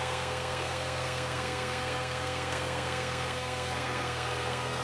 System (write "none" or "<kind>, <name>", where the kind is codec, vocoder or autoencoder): codec, SNAC